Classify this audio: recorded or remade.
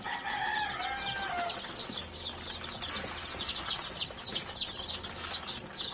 recorded